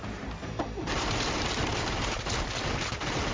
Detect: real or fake real